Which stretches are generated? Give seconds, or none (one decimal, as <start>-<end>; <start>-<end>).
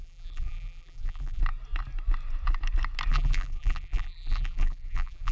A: 0.0-1.4; 3.1-5.3